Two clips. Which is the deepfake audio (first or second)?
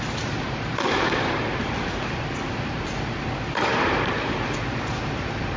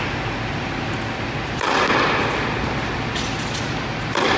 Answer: first